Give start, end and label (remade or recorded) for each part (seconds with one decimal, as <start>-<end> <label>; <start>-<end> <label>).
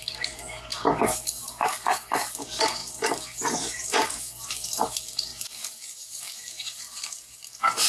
0.0-7.9 remade